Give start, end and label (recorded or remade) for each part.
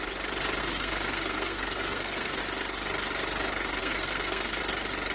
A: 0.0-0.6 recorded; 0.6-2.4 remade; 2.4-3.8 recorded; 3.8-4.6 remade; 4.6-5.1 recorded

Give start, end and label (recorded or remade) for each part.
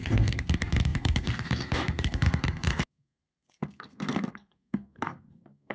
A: 0.0-5.7 remade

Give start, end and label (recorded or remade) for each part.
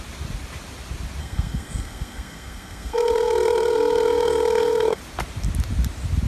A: 0.0-1.2 recorded; 1.2-5.0 remade; 5.0-6.3 recorded